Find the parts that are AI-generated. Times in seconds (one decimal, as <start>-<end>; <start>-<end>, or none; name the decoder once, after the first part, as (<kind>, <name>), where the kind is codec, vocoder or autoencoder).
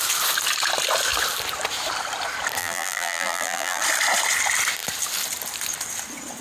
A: 2.6-3.8 (vocoder, BigVGAN v2)